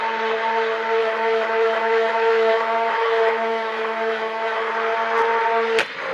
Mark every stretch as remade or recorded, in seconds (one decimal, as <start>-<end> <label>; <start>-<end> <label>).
0.0-1.0 recorded; 1.0-4.7 remade; 4.7-6.1 recorded